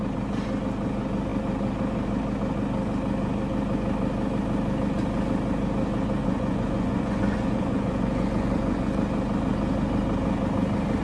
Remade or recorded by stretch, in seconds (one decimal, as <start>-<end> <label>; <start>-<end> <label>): 0.0-6.2 recorded; 6.2-8.9 remade; 8.9-11.0 recorded